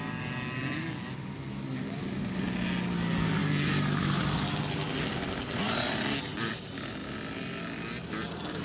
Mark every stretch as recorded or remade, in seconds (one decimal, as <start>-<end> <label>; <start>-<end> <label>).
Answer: 0.0-1.5 recorded; 1.5-2.0 remade; 2.0-3.4 recorded; 3.4-4.2 remade; 4.2-8.6 recorded